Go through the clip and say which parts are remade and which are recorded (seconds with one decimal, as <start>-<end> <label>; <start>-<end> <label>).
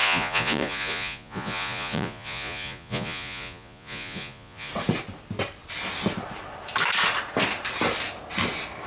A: 0.0-4.7 remade; 4.7-8.9 recorded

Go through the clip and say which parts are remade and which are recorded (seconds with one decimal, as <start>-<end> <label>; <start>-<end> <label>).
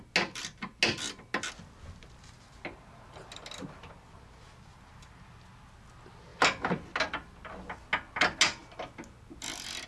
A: 0.0-9.9 recorded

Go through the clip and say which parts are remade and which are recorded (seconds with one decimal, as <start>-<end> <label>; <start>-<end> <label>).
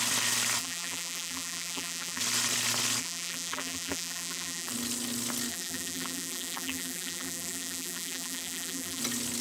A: 0.0-0.6 recorded; 0.6-2.2 remade; 2.2-3.0 recorded; 3.0-4.7 remade; 4.7-5.5 recorded; 5.5-9.0 remade; 9.0-9.4 recorded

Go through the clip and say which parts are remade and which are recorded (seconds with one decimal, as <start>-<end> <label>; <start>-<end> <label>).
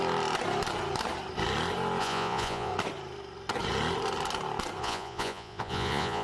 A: 0.0-2.0 recorded; 2.0-2.7 remade; 2.7-4.8 recorded; 4.8-6.2 remade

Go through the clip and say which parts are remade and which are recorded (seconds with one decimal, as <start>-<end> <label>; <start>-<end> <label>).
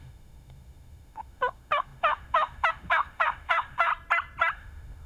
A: 0.0-3.9 remade; 3.9-4.5 recorded; 4.5-5.1 remade